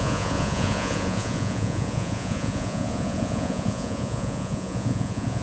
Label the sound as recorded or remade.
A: remade